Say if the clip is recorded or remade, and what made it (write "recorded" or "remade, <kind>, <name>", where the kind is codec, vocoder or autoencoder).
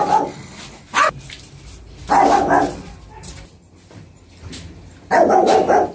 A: recorded